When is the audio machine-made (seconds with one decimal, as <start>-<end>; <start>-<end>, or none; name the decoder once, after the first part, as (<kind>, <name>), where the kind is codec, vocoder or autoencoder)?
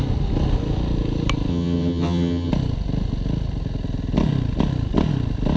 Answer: 1.5-2.5 (vocoder, HiFi-GAN)